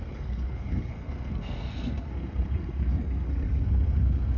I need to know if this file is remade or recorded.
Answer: remade